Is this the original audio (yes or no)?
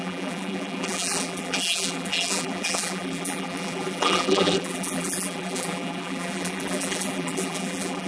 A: no